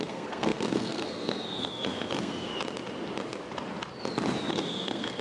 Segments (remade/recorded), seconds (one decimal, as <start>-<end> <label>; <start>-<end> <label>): 0.0-2.5 remade; 2.5-4.5 recorded; 4.5-5.2 remade